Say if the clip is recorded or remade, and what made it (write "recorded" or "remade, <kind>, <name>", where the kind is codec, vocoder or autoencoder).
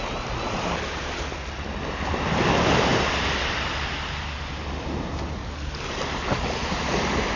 recorded